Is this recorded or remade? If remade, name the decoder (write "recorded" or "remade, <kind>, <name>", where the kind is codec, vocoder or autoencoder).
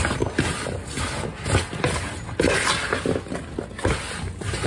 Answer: recorded